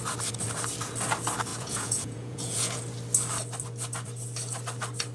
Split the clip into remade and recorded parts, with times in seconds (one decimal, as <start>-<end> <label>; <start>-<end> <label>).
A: 0.0-1.5 recorded; 1.5-2.8 remade; 2.8-5.1 recorded